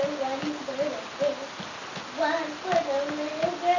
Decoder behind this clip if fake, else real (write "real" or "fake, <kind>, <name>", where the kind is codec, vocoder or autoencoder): real